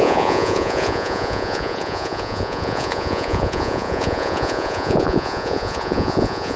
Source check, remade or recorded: remade